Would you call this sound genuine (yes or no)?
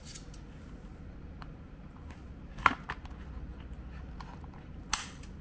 yes